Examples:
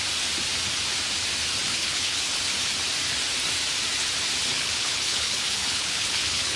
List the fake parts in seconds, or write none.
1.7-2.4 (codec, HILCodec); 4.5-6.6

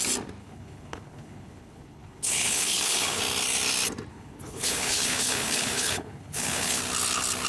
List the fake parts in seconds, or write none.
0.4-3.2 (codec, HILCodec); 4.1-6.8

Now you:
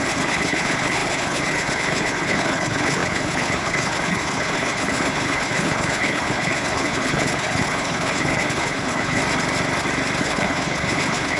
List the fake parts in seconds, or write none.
0.0-9.2 (codec, HILCodec); 10.2-11.4

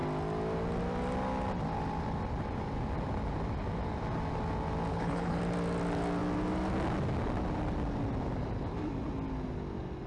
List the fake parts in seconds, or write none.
4.9-5.4 (codec, HILCodec)

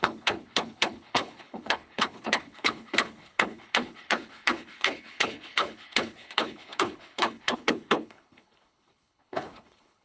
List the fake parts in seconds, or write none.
0.0-10.0 (codec, HILCodec)

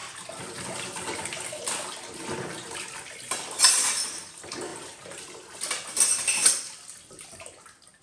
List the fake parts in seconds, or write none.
none

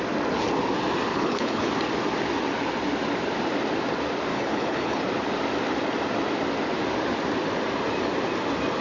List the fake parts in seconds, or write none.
1.1-1.7 (codec, HILCodec); 4.3-5.0